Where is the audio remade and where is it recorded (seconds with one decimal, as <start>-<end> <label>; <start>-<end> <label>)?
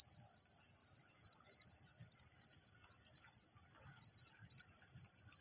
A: 0.0-0.8 remade; 0.8-1.4 recorded; 1.4-1.9 remade; 1.9-4.0 recorded; 4.0-5.4 remade